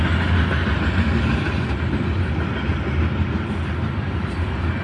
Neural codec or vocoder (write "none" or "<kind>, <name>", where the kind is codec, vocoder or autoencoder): none